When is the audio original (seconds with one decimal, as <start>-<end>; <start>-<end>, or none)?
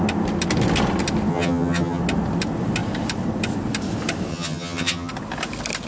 0.0-1.3; 2.0-4.3; 5.1-5.9